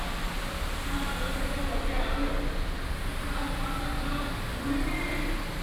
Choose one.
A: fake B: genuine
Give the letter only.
B